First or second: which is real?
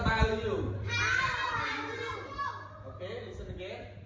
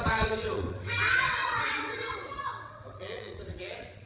first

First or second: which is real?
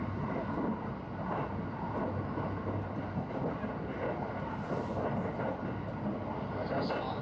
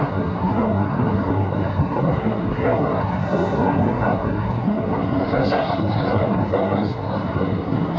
first